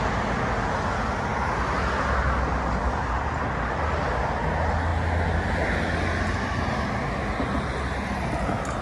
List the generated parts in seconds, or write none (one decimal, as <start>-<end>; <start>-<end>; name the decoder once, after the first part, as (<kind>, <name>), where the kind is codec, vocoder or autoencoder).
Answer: none